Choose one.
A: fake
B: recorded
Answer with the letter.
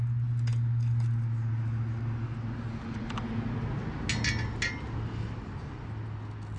B